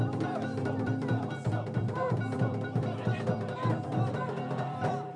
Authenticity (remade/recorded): remade